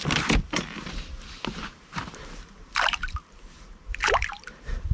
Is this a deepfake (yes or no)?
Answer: yes